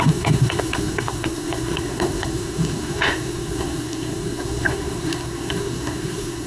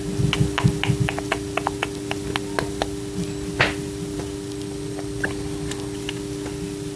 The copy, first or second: first